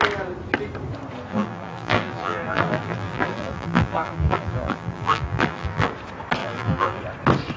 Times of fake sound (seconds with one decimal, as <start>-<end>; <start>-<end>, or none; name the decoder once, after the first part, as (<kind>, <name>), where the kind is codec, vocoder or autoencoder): 1.3-5.9 (vocoder, BigVGAN v2); 6.4-7.0